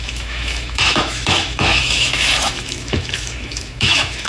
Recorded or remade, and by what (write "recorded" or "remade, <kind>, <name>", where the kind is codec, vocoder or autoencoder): remade, autoencoder, DAC-VAE